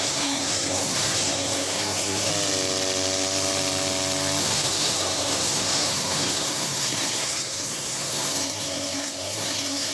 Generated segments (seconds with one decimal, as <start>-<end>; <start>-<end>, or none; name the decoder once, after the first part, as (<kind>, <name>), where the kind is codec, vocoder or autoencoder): 0.0-2.3 (codec, SNAC); 4.4-9.9

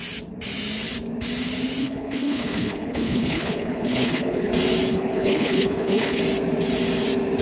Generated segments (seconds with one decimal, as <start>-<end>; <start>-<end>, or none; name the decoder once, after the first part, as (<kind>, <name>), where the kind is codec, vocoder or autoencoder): 1.8-4.5 (codec, HILCodec); 4.9-6.2

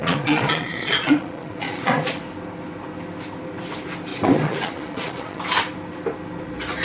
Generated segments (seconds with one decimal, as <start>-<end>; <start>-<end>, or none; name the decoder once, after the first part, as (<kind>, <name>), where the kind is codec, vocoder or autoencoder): 0.0-2.2 (vocoder, Vocos); 4.1-5.4

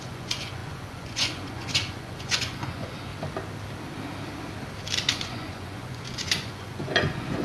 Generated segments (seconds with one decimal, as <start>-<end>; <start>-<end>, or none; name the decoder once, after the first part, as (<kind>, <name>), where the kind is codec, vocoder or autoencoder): 0.0-3.1 (vocoder, Vocos); 5.1-7.4